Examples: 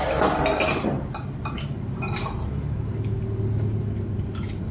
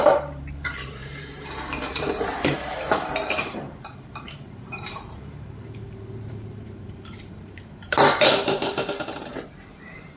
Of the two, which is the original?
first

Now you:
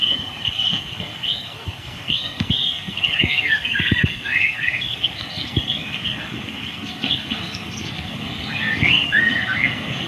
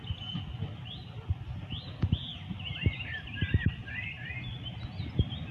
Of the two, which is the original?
second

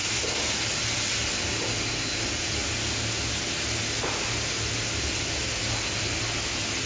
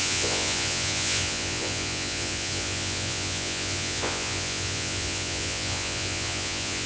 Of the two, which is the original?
first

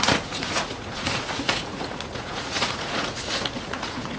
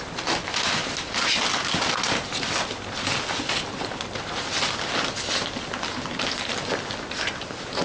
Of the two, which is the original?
second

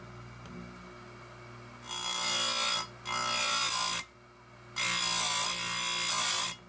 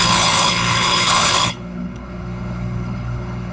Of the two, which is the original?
first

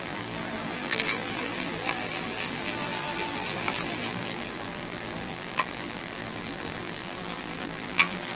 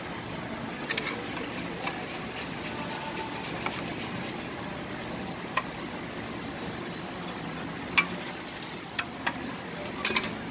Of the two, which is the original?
second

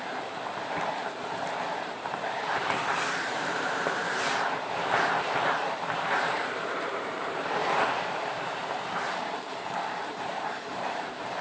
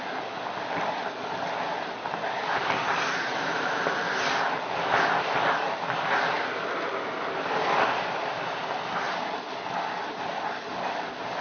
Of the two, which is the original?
second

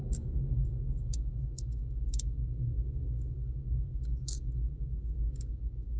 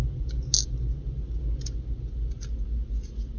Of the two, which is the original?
second